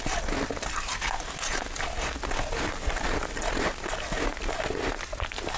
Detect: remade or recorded recorded